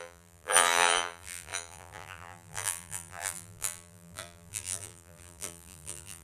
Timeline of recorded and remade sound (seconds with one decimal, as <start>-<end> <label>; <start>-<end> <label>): 0.0-6.2 remade